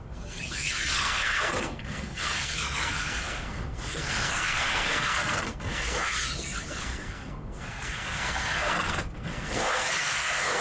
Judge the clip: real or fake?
fake